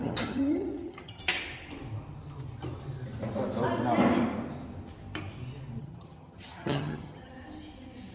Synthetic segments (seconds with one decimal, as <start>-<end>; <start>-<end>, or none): 0.0-1.2; 5.8-7.3